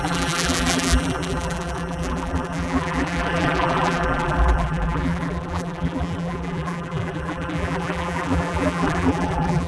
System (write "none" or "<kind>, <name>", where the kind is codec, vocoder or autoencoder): vocoder, BigVGAN v2